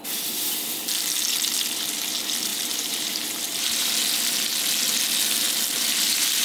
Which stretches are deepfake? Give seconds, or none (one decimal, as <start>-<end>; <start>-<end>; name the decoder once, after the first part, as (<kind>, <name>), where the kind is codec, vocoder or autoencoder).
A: 2.5-4.0 (vocoder, BigVGAN v2)